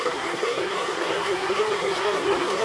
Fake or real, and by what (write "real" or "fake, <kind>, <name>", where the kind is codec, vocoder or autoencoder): fake, codec, SNAC